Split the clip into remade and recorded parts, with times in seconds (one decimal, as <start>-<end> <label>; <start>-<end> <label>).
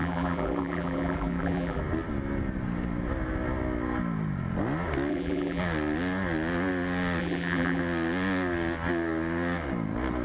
0.0-1.8 remade; 1.8-5.1 recorded; 5.1-5.6 remade; 5.6-7.2 recorded; 7.2-7.8 remade; 7.8-10.2 recorded